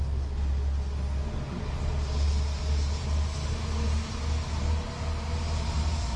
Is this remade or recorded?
recorded